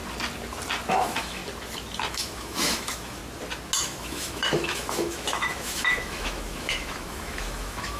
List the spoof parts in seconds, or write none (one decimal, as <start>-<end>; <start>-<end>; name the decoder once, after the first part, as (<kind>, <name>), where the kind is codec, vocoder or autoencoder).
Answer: 0.9-1.4 (autoencoder, DAC-VAE); 2.1-3.2; 3.8-8.0